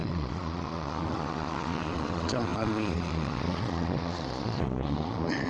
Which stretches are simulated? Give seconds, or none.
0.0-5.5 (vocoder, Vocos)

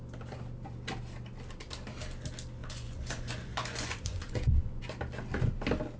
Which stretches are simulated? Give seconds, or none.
2.6-4.8 (vocoder, Vocos)

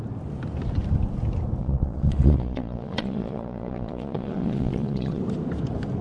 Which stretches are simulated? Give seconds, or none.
1.6-5.2 (vocoder, Vocos)

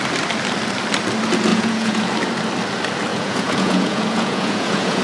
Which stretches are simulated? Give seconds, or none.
1.5-2.0 (vocoder, Vocos); 3.1-5.0